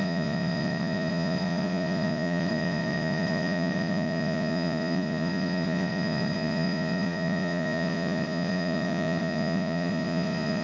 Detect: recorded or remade remade